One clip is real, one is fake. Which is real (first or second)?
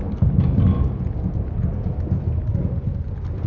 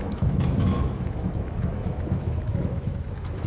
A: first